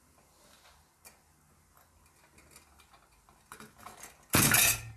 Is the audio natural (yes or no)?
yes